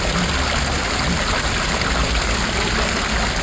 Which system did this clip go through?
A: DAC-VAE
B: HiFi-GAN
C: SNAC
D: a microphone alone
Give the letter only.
D